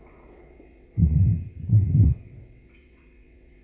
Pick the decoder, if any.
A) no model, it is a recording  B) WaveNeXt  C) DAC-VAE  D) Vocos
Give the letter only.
B